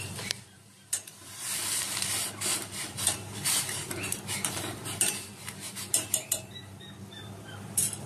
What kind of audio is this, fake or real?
fake